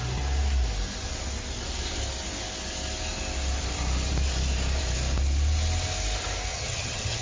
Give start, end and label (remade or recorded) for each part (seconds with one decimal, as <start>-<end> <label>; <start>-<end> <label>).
0.0-6.5 recorded; 6.5-7.2 remade